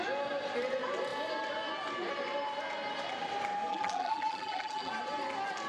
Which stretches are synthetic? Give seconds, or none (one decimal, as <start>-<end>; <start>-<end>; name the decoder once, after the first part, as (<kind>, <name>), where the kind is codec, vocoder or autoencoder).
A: 3.7-4.9 (vocoder, BigVGAN v2)